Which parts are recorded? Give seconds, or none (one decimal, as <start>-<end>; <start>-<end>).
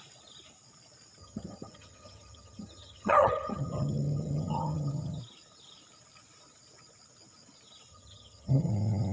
0.0-1.2; 5.2-7.9; 8.7-9.1